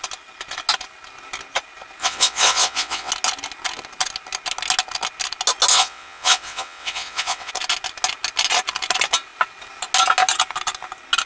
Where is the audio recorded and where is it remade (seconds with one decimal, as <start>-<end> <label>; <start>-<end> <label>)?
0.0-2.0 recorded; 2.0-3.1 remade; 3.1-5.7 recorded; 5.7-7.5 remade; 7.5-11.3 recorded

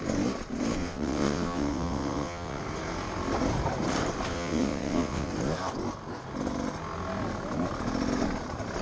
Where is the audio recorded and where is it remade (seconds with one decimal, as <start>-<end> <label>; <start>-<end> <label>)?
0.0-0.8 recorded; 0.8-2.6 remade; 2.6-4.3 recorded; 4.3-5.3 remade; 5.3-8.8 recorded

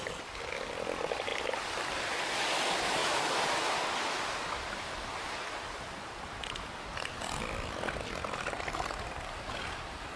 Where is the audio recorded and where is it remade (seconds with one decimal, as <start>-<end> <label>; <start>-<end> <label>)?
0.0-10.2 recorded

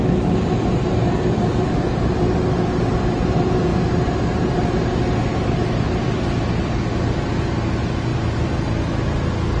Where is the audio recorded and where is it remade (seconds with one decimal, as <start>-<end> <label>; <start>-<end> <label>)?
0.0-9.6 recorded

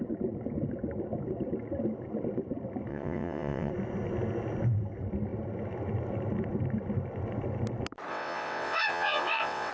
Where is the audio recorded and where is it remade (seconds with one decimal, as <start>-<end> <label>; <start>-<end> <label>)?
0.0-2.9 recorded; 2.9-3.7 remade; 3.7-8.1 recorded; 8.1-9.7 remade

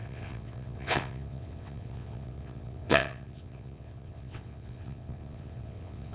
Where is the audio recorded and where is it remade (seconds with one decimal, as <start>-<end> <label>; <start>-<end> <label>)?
0.0-6.1 remade

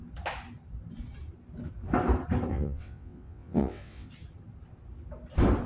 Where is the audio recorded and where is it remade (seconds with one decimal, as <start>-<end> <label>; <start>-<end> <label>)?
0.0-2.5 recorded; 2.5-4.1 remade; 4.1-5.7 recorded